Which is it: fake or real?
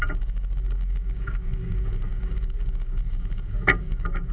fake